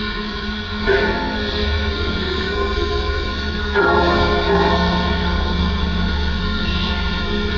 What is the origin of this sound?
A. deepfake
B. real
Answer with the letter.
A